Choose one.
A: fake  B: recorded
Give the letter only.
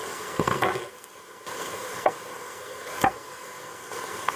A